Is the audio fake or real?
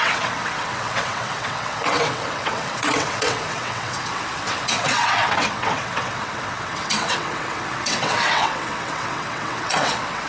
fake